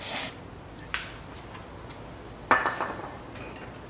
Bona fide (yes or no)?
yes